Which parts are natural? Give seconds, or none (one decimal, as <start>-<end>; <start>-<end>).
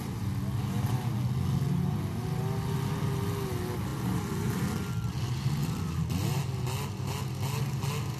0.0-3.9; 4.9-5.6; 6.4-8.2